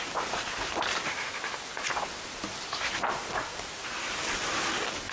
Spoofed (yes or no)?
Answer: no